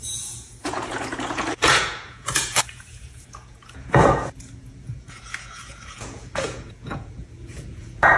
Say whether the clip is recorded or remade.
remade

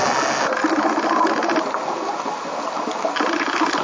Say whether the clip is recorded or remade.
recorded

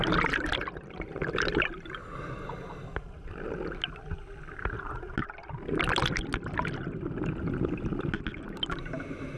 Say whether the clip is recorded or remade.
recorded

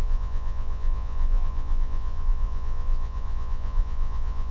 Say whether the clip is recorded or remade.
remade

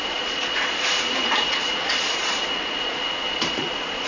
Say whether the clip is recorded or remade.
remade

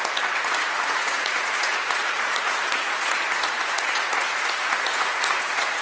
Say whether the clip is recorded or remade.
remade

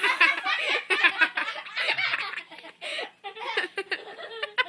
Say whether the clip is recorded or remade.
recorded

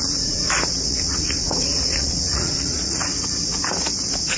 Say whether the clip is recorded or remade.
remade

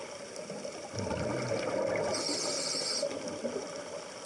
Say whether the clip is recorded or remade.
recorded